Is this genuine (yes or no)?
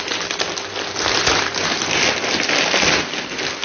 yes